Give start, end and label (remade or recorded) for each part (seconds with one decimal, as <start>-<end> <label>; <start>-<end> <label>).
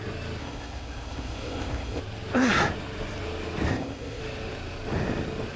0.0-0.4 recorded; 0.4-2.0 remade; 2.0-3.7 recorded; 3.7-4.2 remade; 4.2-5.6 recorded